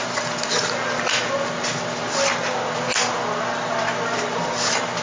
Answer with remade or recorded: recorded